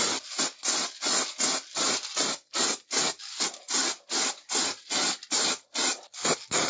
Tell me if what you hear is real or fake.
real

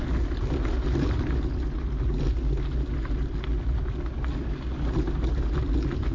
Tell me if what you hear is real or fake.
real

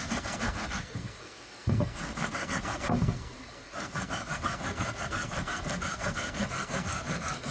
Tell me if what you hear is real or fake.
fake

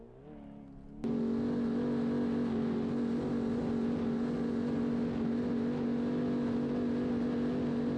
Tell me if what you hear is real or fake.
real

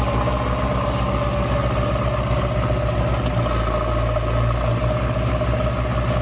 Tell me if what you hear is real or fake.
real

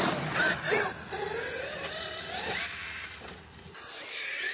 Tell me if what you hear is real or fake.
real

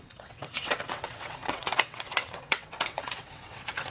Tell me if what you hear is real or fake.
fake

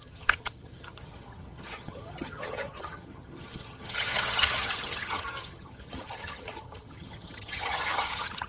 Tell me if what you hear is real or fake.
fake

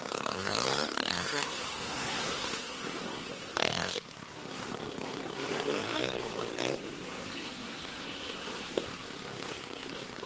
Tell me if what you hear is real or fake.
fake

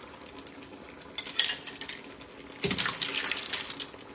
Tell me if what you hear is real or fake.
real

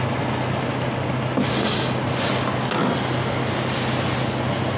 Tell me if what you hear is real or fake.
real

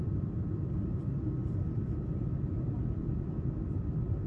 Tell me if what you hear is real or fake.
fake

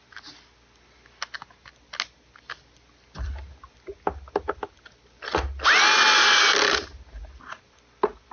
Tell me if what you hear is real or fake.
real